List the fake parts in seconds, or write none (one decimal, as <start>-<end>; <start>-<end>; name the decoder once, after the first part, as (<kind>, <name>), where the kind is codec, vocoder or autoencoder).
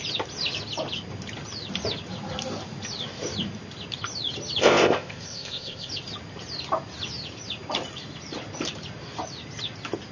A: 4.6-5.9 (codec, ZipCodec)